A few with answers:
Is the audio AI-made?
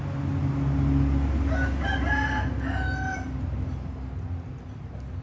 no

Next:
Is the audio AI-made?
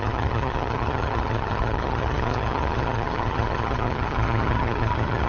yes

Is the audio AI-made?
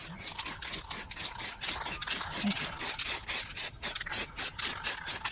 no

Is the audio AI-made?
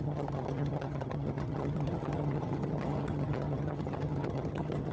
yes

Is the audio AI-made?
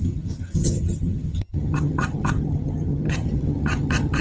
yes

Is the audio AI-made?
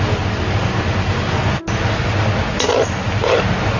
no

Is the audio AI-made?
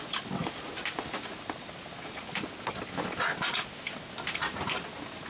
no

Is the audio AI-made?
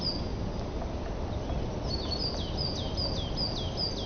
no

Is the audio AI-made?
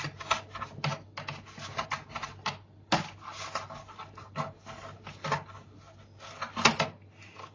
no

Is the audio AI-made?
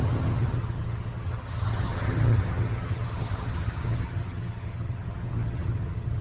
yes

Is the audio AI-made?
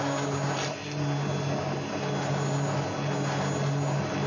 no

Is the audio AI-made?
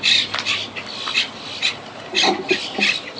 no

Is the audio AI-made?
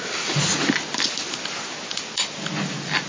no